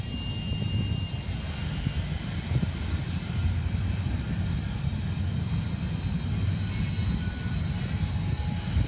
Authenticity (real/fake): real